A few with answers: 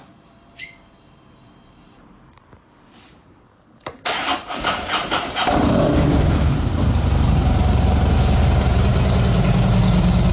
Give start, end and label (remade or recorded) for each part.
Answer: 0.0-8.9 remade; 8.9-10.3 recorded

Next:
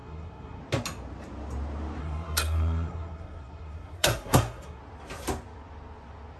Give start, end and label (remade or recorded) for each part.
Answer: 0.0-0.6 remade; 0.6-2.0 recorded; 2.0-4.8 remade; 4.8-6.4 recorded

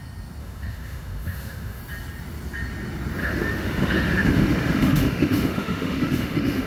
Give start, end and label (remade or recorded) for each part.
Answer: 0.0-0.4 recorded; 0.4-1.8 remade; 1.8-3.2 recorded; 3.2-6.7 remade

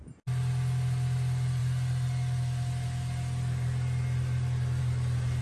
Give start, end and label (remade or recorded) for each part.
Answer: 0.0-5.4 recorded

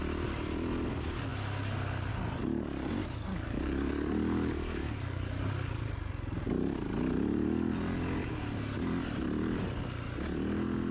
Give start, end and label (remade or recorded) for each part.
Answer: 0.0-3.3 recorded; 3.3-5.5 remade; 5.5-10.9 recorded